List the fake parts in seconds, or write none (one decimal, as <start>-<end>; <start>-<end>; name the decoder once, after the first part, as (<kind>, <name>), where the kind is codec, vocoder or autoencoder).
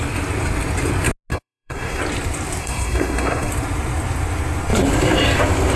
1.3-2.0 (codec, SNAC); 2.6-3.5